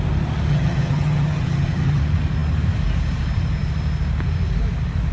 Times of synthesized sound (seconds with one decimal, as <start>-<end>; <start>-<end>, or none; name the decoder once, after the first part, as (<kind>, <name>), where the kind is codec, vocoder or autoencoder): 0.5-2.0 (vocoder, HiFi-GAN)